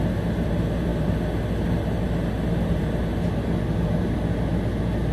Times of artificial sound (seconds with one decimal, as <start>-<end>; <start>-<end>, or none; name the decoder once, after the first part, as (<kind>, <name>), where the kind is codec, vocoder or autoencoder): none